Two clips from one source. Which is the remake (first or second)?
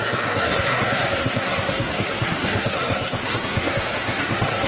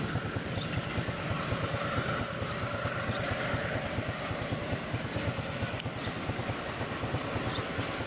first